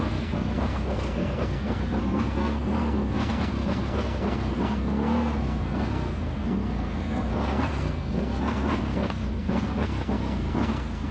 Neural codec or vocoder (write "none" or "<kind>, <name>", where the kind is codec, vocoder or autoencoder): codec, SNAC